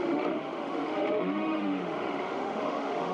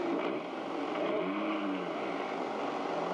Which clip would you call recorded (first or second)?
second